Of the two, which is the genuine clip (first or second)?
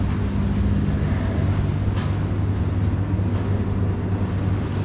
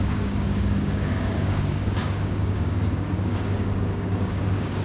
first